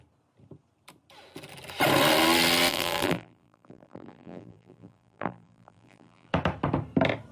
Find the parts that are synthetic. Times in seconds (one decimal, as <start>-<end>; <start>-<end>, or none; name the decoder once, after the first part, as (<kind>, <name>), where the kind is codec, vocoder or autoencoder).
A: 2.7-6.3 (vocoder, BigVGAN v2)